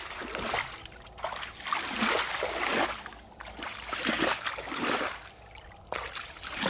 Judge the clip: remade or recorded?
recorded